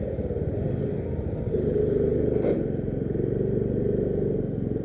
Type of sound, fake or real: real